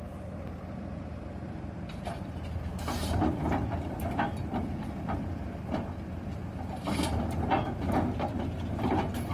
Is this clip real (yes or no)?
yes